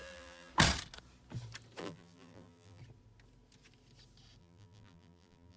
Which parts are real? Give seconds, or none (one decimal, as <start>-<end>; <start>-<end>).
0.5-1.8; 2.8-4.4